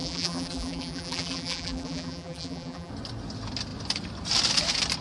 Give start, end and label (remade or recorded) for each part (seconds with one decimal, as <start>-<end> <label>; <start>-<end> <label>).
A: 0.0-2.9 remade; 2.9-5.0 recorded